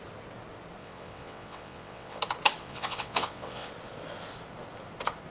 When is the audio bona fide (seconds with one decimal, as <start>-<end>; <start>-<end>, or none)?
0.0-0.8; 2.2-2.6; 3.7-5.3